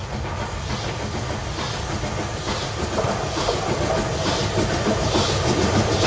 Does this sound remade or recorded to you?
recorded